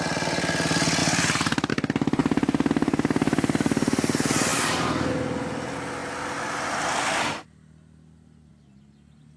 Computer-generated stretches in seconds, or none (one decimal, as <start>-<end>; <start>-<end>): 1.0-1.7; 2.2-2.7